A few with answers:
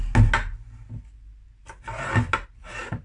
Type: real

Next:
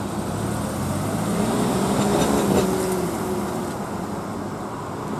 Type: real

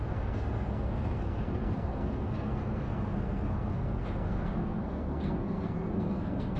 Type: fake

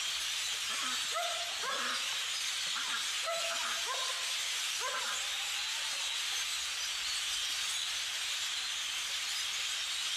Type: real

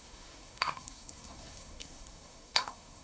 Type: fake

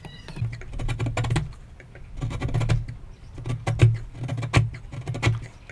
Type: real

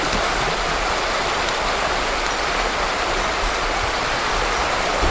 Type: real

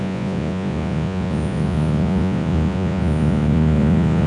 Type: fake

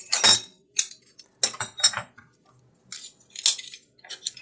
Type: real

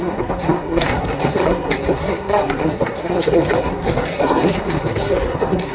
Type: fake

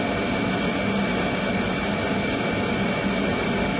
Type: real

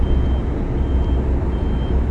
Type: real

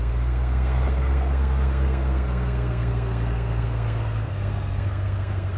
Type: fake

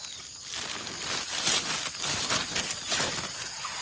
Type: real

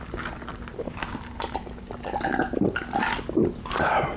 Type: real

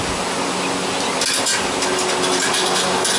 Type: real